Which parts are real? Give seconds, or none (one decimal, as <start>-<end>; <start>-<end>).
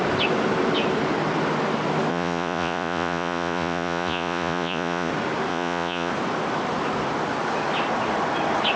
0.0-2.1; 5.1-5.5; 6.1-8.8